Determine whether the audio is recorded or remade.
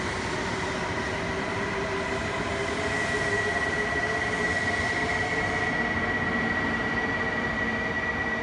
recorded